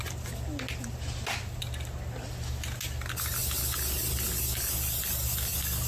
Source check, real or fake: real